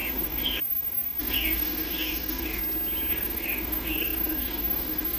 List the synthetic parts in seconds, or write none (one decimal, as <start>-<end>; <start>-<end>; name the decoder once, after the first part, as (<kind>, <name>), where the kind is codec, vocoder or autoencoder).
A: 0.0-2.6 (codec, DAC); 3.1-5.2